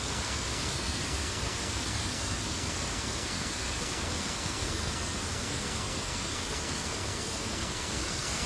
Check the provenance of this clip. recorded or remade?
remade